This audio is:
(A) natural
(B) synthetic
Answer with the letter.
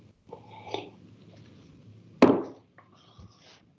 A